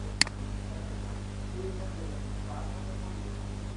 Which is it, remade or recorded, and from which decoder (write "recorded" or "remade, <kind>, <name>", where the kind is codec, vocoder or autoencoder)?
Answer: recorded